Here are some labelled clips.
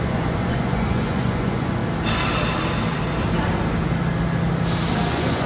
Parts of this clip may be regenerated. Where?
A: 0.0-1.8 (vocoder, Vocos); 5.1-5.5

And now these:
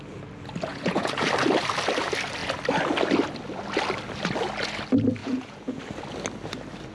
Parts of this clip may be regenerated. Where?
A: 0.7-1.3 (vocoder, Vocos); 5.2-5.8

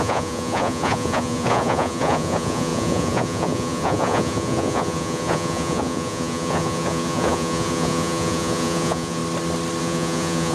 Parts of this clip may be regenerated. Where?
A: 0.0-9.2 (vocoder, Vocos); 9.8-10.5

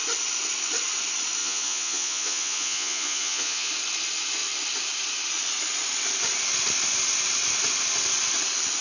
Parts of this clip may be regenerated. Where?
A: 1.4-3.7 (vocoder, Vocos)

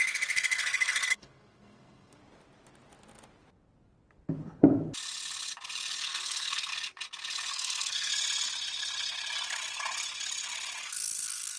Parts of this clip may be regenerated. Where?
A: 0.0-2.2 (codec, SNAC); 6.0-6.7; 7.5-8.1; 10.8-11.6

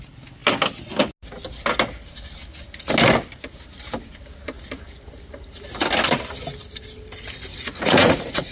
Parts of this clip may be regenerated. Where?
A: 7.5-8.5 (vocoder, Vocos)

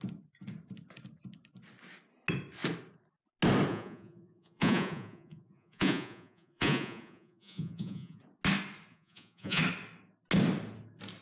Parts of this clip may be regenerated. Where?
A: 3.7-8.2 (vocoder, Vocos); 8.9-9.6